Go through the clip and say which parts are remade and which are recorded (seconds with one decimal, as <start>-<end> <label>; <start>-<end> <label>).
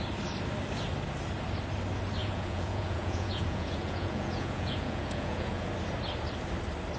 0.0-2.2 recorded; 2.2-5.7 remade; 5.7-7.0 recorded